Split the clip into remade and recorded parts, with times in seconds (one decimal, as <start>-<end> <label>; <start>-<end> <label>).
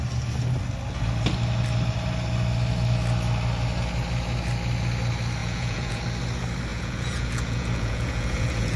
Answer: 0.0-5.4 recorded; 5.4-6.0 remade; 6.0-6.7 recorded; 6.7-8.8 remade